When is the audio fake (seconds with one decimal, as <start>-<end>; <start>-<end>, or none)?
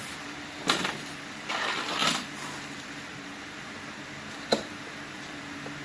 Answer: none